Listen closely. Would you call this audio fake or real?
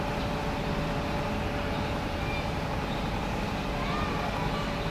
real